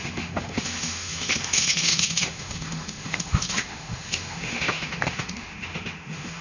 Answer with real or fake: fake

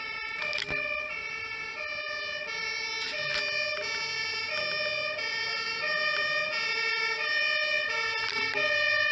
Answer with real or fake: real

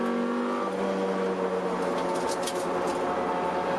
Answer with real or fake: real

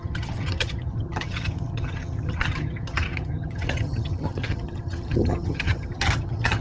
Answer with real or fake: fake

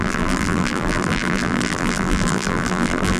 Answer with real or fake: fake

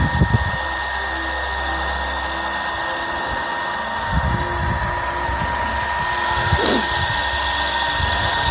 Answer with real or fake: real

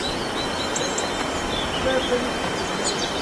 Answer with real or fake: real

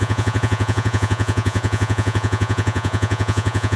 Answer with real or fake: fake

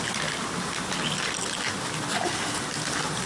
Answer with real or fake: real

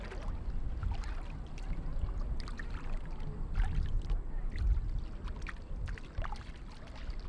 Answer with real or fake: real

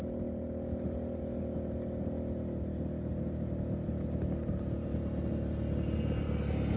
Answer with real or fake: real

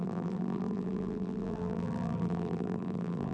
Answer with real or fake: fake